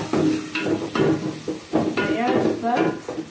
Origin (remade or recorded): recorded